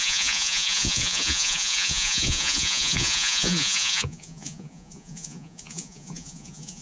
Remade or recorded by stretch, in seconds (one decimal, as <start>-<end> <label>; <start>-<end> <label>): 0.0-6.8 remade